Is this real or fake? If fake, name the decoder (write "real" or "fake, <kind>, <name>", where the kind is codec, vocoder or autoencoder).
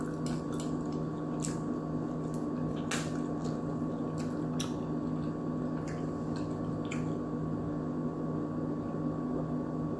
real